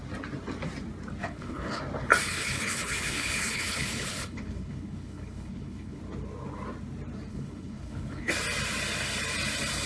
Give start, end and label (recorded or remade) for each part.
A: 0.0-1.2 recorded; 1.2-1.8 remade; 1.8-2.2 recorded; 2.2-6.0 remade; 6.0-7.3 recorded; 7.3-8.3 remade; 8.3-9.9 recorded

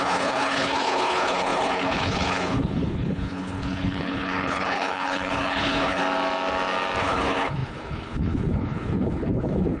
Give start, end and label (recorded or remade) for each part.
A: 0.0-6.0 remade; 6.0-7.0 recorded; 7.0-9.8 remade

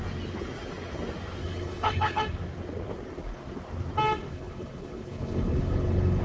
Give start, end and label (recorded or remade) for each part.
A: 0.0-1.4 recorded; 1.4-2.2 remade; 2.2-4.3 recorded; 4.3-6.2 remade